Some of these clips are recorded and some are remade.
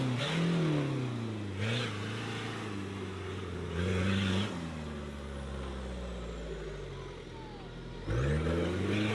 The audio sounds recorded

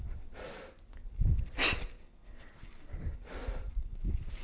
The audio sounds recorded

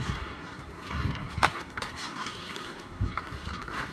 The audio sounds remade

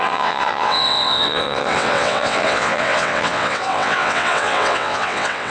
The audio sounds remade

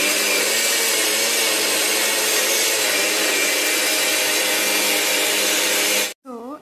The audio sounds recorded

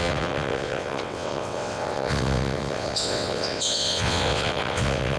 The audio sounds remade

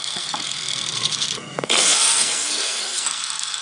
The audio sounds remade